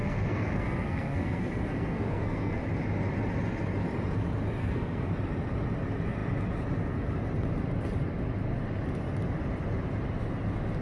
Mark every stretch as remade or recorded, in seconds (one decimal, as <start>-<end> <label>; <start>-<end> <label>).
0.0-2.6 remade; 2.6-4.6 recorded; 4.6-5.1 remade; 5.1-10.8 recorded